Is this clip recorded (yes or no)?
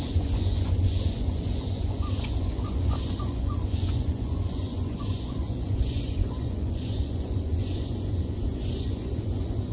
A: no